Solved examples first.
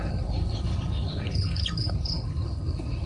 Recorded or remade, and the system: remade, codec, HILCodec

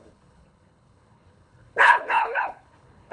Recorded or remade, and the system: remade, codec, HILCodec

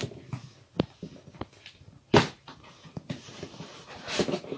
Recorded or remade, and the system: recorded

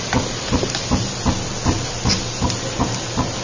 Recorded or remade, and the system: recorded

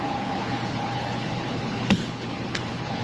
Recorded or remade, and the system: remade, codec, HILCodec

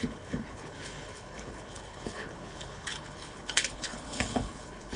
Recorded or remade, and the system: remade, codec, HILCodec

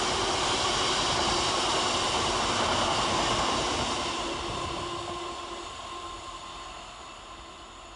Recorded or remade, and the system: recorded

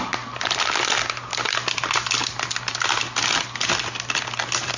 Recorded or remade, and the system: recorded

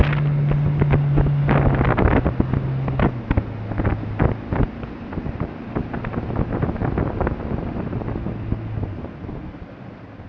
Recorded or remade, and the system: recorded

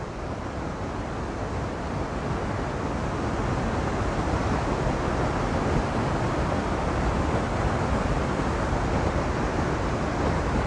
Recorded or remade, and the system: recorded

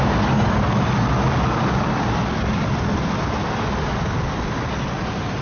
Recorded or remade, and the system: recorded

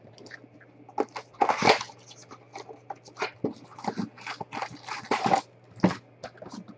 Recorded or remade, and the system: recorded